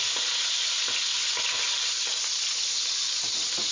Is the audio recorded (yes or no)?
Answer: yes